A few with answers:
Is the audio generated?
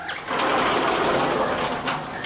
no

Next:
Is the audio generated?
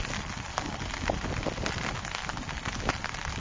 no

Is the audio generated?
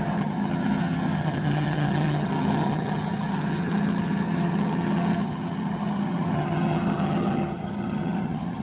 yes